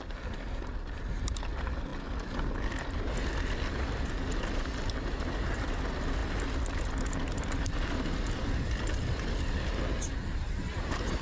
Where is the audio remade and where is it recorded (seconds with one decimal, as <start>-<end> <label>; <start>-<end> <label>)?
0.0-11.2 recorded